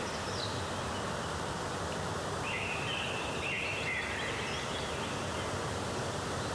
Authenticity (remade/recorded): recorded